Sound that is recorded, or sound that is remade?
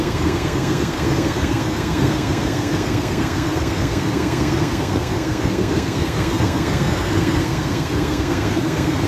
remade